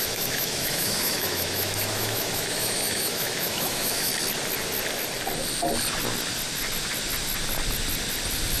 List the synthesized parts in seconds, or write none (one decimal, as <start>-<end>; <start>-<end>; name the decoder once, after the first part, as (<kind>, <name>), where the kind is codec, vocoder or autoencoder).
0.0-4.1 (autoencoder, DAC-VAE)